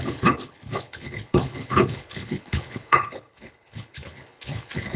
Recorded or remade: remade